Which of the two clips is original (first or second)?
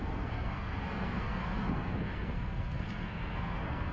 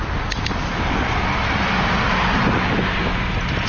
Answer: second